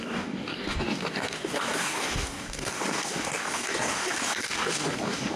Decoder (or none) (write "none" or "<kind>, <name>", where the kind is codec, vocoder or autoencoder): codec, DAC